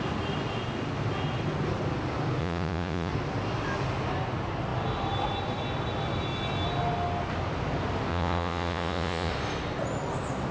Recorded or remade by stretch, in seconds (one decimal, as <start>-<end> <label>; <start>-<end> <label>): 0.0-2.4 recorded; 2.4-3.1 remade; 3.1-8.1 recorded; 8.1-9.3 remade; 9.3-10.5 recorded